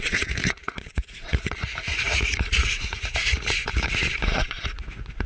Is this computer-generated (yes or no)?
yes